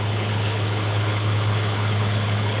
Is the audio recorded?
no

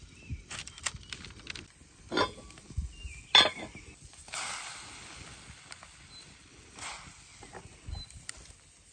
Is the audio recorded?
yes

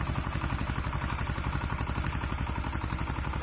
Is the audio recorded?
yes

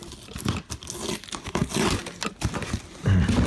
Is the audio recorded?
yes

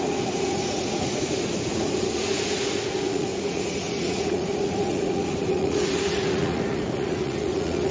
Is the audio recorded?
no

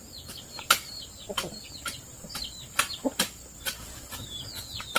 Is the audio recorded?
no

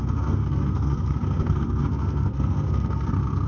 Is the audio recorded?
no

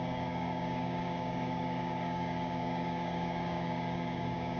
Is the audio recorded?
no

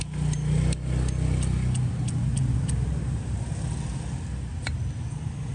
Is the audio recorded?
yes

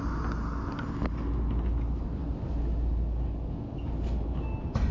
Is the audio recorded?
yes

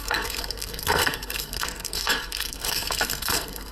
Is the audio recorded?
no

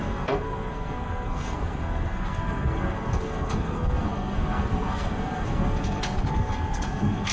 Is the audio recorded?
no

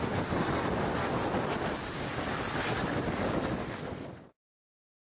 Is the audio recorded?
yes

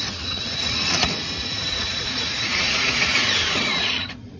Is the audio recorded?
no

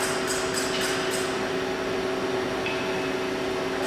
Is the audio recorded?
yes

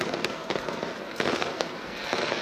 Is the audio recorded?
no